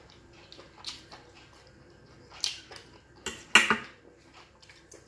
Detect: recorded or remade recorded